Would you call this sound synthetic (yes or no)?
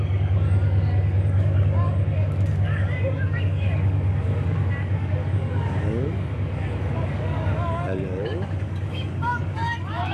yes